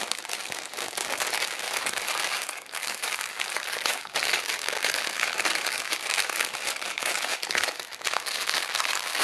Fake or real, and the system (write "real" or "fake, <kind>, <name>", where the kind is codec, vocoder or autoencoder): fake, codec, DAC